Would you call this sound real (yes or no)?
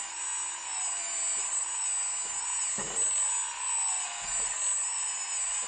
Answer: yes